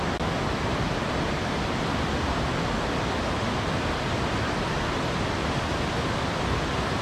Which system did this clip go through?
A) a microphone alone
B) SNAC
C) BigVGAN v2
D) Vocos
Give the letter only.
A